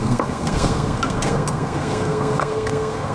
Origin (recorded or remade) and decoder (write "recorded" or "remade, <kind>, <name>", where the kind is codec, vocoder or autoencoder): remade, codec, SNAC